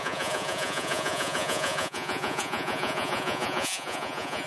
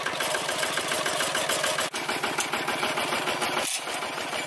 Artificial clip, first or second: first